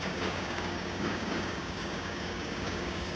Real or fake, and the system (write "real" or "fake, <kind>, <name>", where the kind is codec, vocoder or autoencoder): fake, codec, DAC